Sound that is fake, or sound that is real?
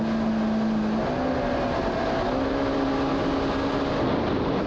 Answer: real